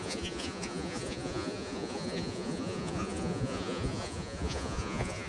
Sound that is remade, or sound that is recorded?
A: remade